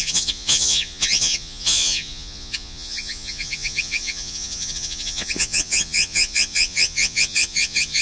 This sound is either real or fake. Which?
fake